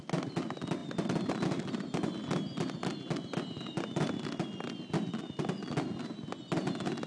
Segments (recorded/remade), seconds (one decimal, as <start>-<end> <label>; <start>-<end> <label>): 0.0-7.1 recorded